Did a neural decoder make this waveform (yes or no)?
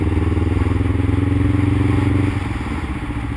no